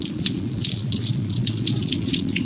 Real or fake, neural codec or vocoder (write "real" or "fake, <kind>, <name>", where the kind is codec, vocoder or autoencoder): fake, vocoder, Vocos